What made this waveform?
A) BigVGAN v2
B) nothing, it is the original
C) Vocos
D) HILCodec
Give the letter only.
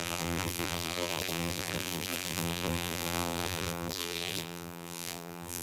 A